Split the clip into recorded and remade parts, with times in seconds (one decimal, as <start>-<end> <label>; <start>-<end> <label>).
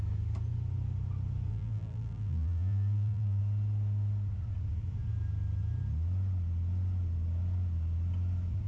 0.0-1.5 recorded; 1.5-3.4 remade; 3.4-8.7 recorded